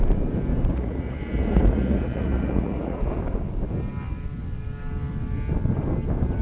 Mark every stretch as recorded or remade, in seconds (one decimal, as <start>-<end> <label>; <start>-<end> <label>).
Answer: 0.0-0.7 recorded; 0.7-3.0 remade; 3.0-6.4 recorded